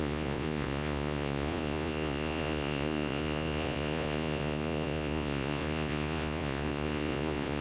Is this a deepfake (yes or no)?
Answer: yes